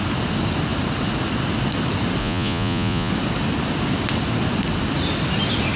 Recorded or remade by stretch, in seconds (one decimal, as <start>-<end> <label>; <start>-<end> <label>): 0.0-2.2 recorded; 2.2-3.1 remade; 3.1-5.8 recorded